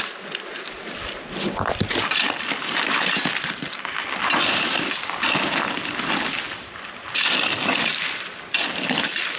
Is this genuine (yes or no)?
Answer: no